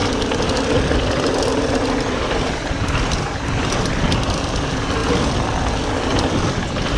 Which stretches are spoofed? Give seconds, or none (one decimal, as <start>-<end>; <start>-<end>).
none